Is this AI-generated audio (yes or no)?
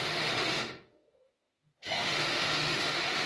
yes